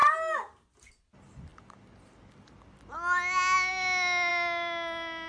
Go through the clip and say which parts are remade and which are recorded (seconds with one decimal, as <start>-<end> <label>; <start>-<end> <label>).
0.0-5.3 recorded